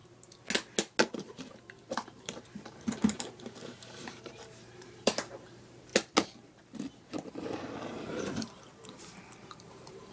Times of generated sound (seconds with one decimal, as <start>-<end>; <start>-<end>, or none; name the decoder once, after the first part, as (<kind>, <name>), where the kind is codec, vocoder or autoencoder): 1.1-5.9 (vocoder, BigVGAN v2); 7.3-10.1